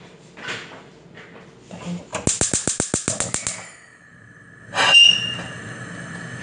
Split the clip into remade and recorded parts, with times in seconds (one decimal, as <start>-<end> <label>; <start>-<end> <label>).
0.0-6.4 recorded